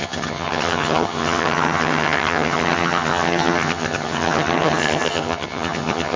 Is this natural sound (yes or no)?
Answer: no